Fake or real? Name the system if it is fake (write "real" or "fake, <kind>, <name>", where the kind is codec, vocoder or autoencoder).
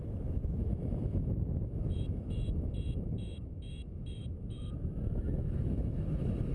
fake, autoencoder, DAC-VAE